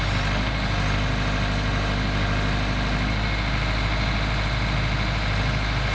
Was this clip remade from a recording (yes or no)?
no